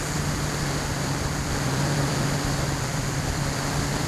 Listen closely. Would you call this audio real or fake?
fake